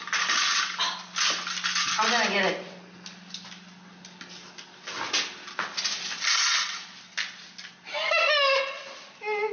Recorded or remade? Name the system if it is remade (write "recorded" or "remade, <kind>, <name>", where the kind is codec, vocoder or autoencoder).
recorded